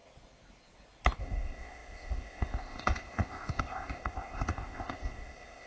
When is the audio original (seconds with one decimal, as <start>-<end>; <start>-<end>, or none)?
0.0-1.2